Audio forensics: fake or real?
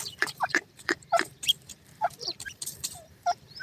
fake